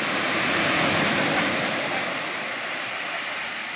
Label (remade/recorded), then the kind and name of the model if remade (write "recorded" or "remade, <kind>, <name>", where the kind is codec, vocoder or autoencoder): recorded